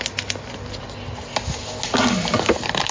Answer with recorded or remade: recorded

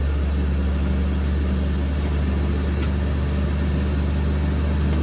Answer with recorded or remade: recorded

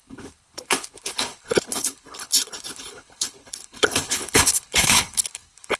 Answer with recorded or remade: remade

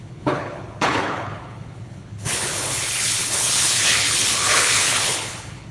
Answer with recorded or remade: remade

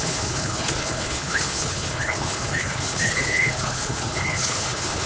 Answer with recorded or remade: remade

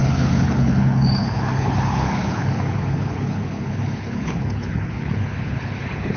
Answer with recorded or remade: remade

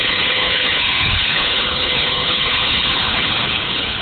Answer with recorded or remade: remade